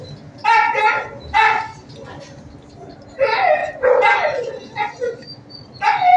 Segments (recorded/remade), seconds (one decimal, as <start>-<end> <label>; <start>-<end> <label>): 0.0-0.4 recorded; 0.4-1.6 remade; 1.6-3.6 recorded; 3.6-4.5 remade; 4.5-6.2 recorded